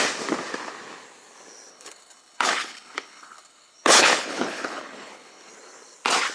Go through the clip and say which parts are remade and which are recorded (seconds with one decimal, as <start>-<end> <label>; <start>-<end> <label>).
0.0-1.7 recorded; 1.7-5.5 remade; 5.5-6.3 recorded